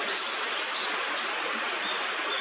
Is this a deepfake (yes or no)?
no